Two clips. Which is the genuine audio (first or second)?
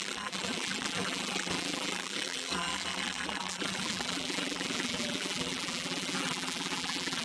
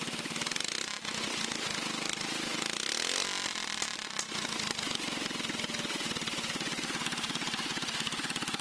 second